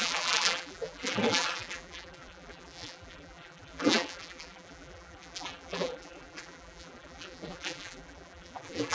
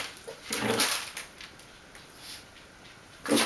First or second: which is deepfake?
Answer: first